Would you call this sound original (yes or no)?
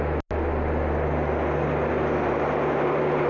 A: yes